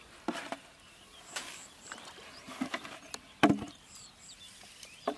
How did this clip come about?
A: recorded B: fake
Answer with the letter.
A